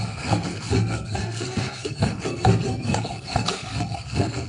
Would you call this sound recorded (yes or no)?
no